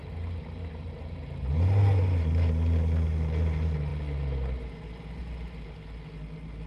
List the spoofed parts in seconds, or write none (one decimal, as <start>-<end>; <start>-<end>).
none